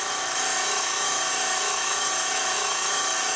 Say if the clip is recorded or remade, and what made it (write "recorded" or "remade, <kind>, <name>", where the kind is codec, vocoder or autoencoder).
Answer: remade, autoencoder, DAC-VAE